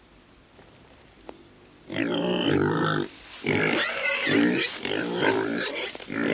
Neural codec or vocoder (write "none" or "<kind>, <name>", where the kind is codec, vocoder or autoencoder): vocoder, BigVGAN v2